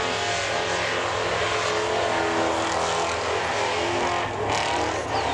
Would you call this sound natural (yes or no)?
yes